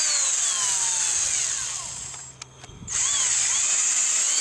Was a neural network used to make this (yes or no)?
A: no